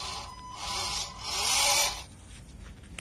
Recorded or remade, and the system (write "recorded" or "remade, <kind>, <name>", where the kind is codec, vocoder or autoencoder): recorded